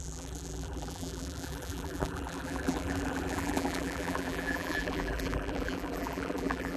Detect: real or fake fake